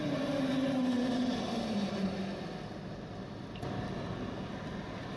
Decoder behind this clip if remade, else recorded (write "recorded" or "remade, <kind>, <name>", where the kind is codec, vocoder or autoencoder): recorded